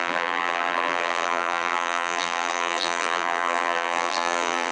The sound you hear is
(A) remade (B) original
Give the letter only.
A